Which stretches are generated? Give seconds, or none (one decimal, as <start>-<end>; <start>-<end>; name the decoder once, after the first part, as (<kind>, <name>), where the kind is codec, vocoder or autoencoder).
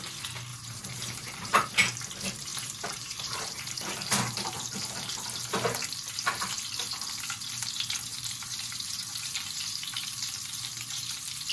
0.5-1.7 (vocoder, BigVGAN v2); 2.5-4.5; 8.1-11.5